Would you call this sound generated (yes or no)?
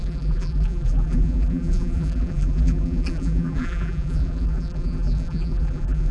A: yes